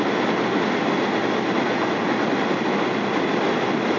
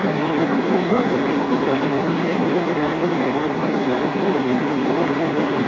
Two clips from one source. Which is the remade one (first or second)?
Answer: second